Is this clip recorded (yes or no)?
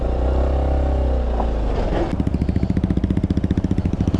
yes